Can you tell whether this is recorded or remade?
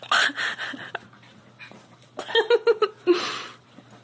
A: recorded